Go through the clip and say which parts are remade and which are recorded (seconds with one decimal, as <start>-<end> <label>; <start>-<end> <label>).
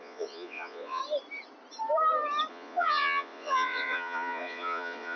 0.0-1.0 remade; 1.0-2.5 recorded; 2.5-5.2 remade